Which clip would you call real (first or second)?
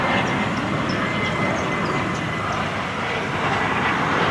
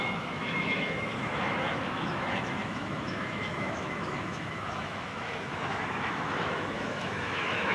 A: first